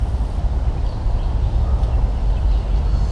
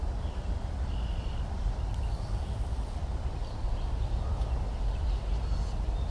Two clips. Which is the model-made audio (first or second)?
second